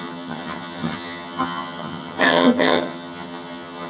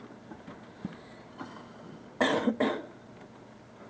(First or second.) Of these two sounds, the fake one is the first